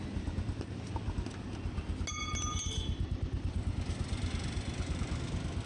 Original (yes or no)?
yes